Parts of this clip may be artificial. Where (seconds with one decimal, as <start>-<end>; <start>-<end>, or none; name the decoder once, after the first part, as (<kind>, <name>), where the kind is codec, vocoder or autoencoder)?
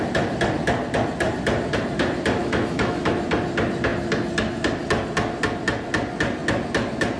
2.4-3.1 (autoencoder, DAC-VAE)